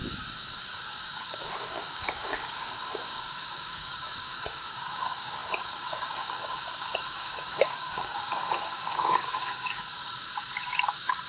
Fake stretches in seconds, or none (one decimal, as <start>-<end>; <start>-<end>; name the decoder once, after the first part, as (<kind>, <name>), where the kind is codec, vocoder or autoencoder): 0.0-11.3 (codec, DAC)